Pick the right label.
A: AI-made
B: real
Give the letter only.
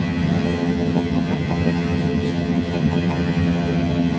A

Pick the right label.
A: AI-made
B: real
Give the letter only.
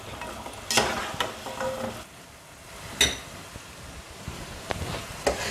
B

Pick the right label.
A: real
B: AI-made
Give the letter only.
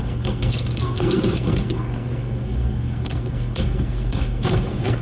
B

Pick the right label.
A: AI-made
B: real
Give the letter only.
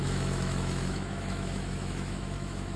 A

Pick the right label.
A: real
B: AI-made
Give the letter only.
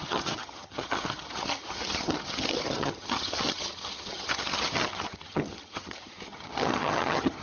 B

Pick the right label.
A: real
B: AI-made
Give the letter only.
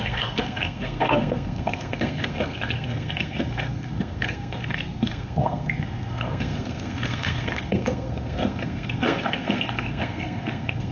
B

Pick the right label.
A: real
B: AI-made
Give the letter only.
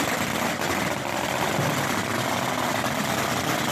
A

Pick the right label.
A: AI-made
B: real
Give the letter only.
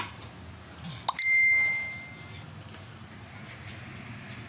B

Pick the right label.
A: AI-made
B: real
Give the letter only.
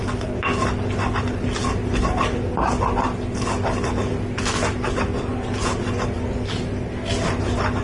B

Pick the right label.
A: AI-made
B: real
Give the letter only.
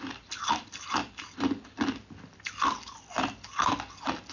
B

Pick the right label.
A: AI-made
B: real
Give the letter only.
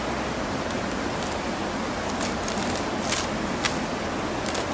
B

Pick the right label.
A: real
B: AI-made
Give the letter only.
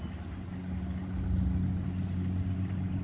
A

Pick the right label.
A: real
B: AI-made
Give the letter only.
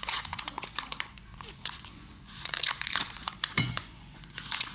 B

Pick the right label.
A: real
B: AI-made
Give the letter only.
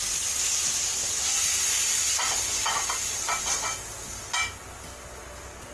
A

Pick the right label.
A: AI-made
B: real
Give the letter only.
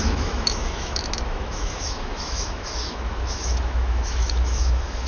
A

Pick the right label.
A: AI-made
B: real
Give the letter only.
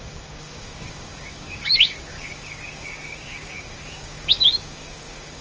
A